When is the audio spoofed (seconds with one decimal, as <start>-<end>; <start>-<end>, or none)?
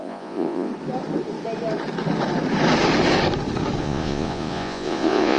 0.0-0.7; 3.8-5.4